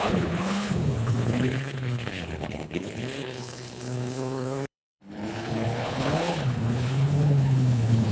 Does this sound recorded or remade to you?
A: remade